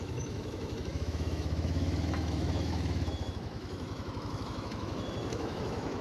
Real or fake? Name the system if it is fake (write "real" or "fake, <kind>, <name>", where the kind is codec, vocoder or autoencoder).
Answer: fake, autoencoder, DAC-VAE